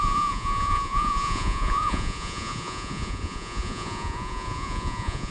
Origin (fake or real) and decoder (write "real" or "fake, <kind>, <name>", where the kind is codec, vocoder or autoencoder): fake, vocoder, Vocos